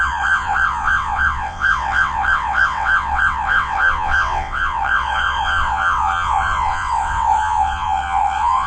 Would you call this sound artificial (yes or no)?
yes